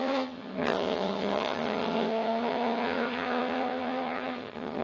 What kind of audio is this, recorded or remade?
remade